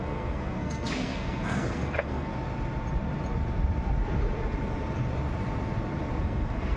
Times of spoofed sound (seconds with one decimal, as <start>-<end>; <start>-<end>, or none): 0.0-2.3; 6.2-6.8

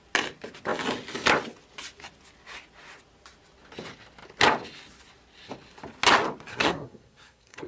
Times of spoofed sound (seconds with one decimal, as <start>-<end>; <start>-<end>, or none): 6.5-7.7

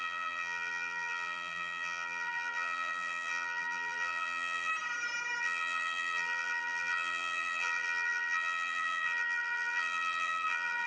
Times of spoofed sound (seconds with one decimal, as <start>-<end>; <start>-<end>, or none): 0.0-4.7; 5.4-10.9